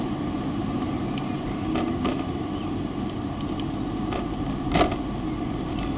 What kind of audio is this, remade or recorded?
recorded